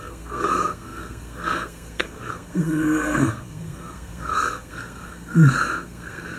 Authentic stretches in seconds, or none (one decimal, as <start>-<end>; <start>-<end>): none